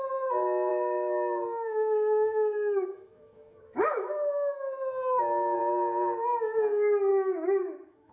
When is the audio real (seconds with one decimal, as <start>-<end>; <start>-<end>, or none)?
0.0-0.7; 5.6-7.1